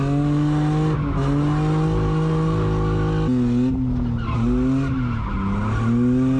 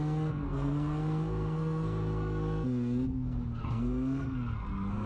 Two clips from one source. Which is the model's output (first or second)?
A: second